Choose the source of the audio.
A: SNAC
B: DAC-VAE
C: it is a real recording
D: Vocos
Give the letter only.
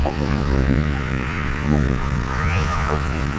D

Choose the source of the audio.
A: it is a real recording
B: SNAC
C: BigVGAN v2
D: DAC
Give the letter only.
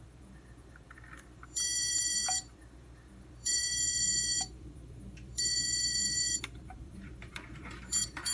C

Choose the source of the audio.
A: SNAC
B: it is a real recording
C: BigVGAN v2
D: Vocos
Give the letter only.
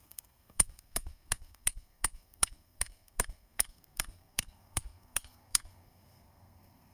A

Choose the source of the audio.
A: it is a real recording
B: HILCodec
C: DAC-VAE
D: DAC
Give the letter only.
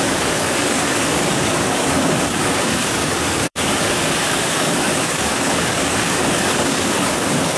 D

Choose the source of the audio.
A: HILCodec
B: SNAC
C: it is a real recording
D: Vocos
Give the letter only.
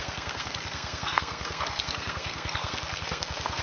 B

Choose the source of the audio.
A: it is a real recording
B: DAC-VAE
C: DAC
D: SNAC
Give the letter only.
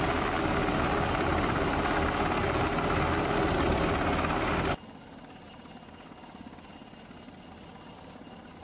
A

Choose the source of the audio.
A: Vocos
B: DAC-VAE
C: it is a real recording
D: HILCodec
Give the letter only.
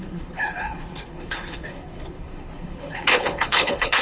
D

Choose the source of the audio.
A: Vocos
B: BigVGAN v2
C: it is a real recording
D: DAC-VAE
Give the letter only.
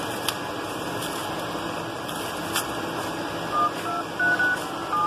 C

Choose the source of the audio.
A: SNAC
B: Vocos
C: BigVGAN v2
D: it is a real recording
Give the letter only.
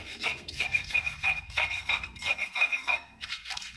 A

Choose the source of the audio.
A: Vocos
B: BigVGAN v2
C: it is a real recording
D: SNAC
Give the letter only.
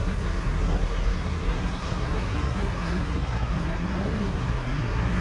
D